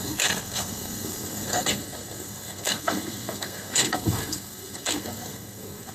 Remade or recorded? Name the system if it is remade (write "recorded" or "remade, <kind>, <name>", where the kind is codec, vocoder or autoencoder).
remade, codec, SNAC